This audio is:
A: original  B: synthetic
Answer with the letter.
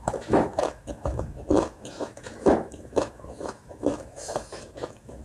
B